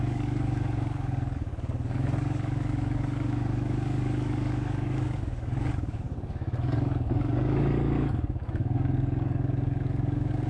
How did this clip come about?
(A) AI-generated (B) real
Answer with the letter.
A